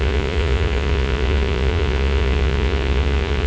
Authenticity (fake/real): fake